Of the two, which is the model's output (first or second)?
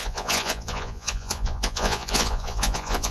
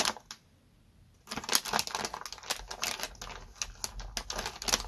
first